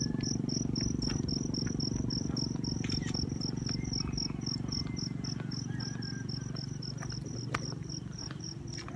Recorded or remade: recorded